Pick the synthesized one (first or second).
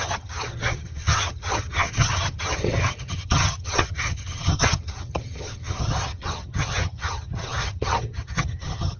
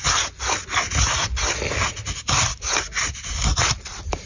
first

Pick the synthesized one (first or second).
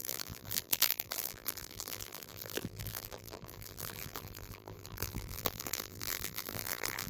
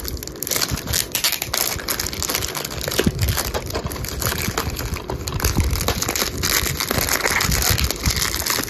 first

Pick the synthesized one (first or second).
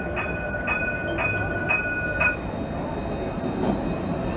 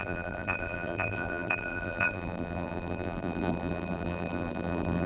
second